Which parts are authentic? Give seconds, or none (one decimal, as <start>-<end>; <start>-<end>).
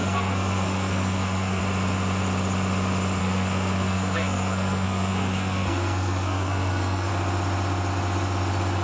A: 1.6-3.2; 7.1-8.8